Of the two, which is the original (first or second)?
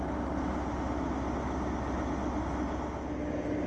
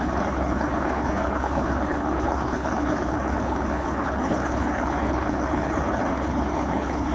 first